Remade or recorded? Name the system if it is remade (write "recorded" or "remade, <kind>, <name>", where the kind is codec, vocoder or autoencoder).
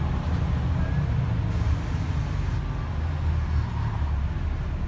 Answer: recorded